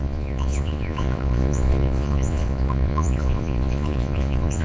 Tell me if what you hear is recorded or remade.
remade